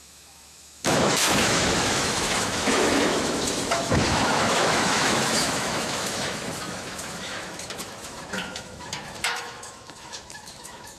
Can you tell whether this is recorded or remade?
remade